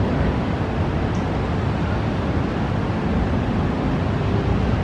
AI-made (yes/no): no